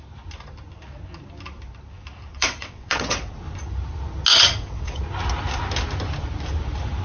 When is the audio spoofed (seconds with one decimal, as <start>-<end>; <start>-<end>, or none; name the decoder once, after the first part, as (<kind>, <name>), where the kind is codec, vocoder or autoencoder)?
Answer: 2.3-3.3 (vocoder, WaveNeXt); 4.3-5.0